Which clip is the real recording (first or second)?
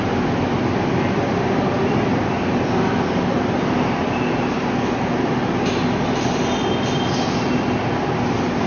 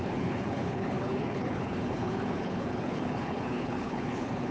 first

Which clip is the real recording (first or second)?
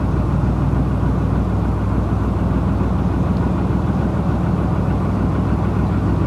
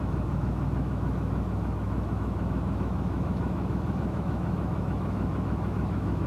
first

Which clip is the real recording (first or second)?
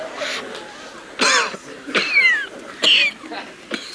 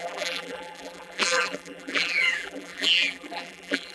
first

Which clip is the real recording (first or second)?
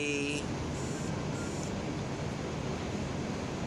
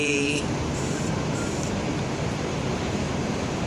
first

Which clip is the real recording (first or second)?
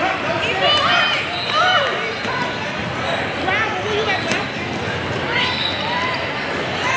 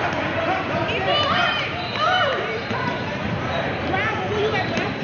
first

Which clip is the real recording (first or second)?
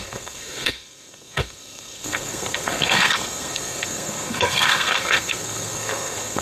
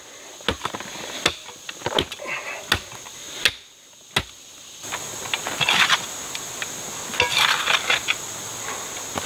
second